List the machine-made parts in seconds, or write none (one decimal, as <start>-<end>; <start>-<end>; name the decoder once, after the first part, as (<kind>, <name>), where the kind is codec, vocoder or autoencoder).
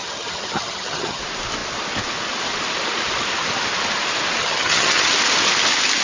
0.0-1.2 (vocoder, HiFi-GAN); 4.4-5.1